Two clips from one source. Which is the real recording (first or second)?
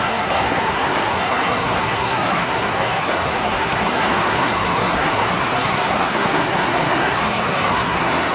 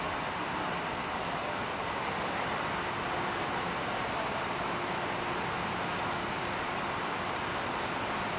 second